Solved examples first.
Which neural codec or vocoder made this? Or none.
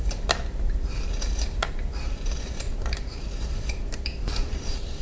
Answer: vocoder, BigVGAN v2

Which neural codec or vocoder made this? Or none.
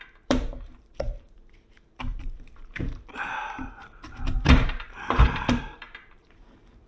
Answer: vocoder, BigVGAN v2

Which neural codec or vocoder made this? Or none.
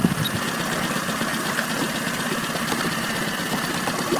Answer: none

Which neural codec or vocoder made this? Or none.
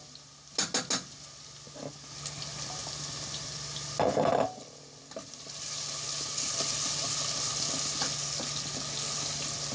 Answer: none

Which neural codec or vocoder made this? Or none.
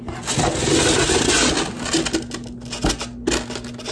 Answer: none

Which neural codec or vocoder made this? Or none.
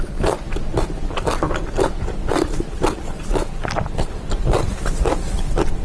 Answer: vocoder, BigVGAN v2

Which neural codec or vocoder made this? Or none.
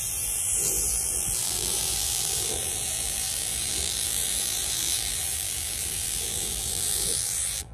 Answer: vocoder, BigVGAN v2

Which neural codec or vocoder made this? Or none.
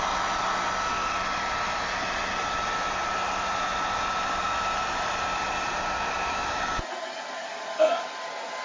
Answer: none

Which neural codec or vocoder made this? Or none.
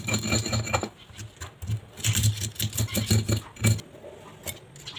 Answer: none